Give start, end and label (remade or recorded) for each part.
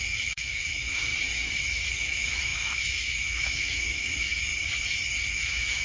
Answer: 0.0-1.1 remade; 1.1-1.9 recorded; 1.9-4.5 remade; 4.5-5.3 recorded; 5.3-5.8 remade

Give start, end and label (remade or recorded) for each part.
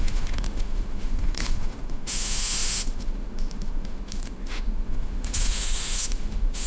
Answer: 0.0-6.7 remade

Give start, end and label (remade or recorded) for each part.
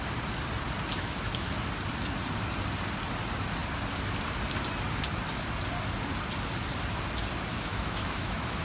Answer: 0.0-0.9 recorded; 0.9-1.5 remade; 1.5-7.5 recorded; 7.5-8.6 remade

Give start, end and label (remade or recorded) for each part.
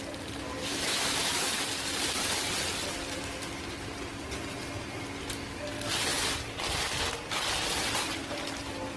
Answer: 0.0-0.7 recorded; 0.7-1.5 remade; 1.5-9.0 recorded